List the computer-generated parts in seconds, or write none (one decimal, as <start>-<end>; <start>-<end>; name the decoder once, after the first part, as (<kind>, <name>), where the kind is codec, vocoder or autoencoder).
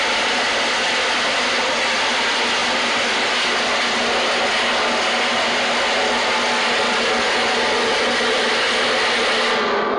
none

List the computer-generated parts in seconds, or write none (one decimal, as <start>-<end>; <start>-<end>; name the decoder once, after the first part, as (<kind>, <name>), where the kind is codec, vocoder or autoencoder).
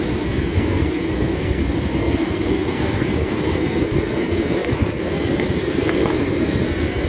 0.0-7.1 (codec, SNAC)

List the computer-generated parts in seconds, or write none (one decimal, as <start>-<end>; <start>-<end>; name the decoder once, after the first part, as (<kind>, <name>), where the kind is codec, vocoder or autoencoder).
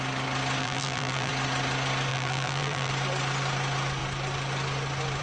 0.6-1.3 (vocoder, BigVGAN v2); 2.1-2.9